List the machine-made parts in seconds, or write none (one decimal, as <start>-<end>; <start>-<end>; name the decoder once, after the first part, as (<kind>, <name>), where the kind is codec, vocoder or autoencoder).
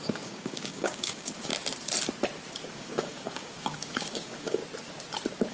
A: 0.0-1.5 (codec, DAC); 2.7-4.6